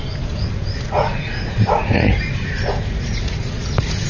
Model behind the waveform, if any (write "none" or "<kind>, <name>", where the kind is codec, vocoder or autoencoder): vocoder, Vocos